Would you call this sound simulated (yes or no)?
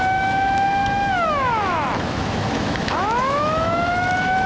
yes